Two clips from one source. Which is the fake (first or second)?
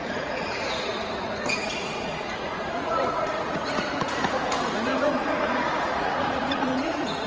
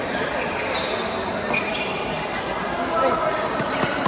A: first